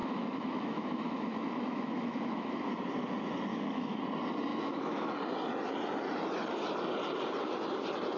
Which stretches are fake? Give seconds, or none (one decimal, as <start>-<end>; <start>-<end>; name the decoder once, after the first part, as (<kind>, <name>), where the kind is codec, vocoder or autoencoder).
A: 0.0-2.7 (autoencoder, DAC-VAE); 3.5-4.0; 4.5-5.1